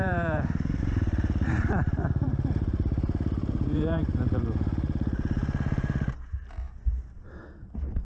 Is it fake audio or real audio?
fake